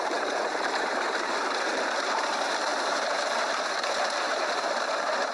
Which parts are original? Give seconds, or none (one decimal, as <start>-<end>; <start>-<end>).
none